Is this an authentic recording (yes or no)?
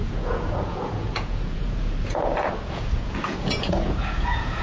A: no